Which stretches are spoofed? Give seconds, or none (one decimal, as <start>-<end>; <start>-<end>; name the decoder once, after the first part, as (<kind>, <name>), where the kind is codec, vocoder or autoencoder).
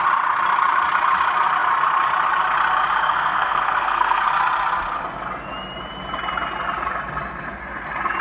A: 3.1-4.3 (codec, SNAC)